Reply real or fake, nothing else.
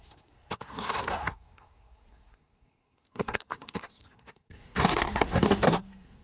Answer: fake